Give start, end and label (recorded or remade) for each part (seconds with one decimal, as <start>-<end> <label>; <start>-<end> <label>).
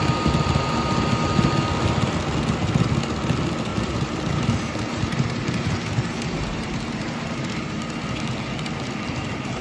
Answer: 0.0-3.7 recorded; 3.7-7.8 remade; 7.8-9.6 recorded